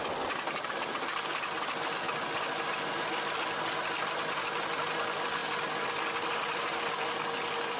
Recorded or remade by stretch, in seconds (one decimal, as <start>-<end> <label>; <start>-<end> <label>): 0.0-7.8 recorded